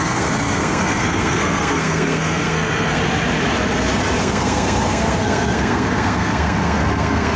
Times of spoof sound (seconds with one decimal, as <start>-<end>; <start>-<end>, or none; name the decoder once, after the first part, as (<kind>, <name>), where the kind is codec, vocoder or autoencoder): 0.0-3.0 (codec, SNAC); 4.2-7.4